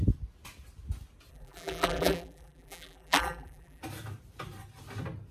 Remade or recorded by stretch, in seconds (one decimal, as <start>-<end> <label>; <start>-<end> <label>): 0.0-1.3 recorded; 1.3-3.8 remade; 3.8-5.3 recorded